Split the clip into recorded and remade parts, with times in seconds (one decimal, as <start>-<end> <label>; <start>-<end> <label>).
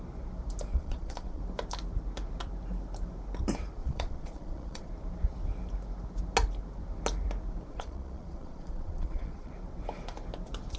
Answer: 0.0-0.7 recorded; 0.7-1.4 remade; 1.4-3.8 recorded; 3.8-4.9 remade; 4.9-7.7 recorded; 7.7-9.5 remade; 9.5-10.8 recorded